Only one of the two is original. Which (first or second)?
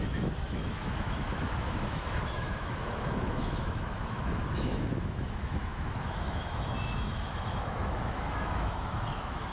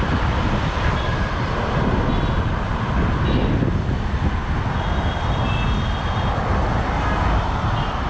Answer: second